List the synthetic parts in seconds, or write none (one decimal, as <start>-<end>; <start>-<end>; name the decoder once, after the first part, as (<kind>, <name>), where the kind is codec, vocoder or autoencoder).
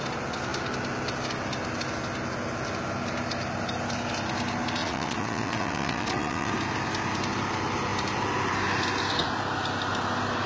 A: 4.8-6.5 (vocoder, Vocos)